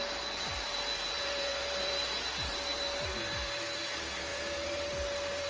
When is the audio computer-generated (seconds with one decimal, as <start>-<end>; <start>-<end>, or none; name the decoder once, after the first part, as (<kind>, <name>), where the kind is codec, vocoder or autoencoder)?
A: 0.0-5.5 (vocoder, BigVGAN v2)